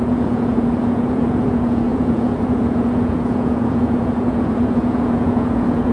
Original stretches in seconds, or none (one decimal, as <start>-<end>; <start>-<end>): none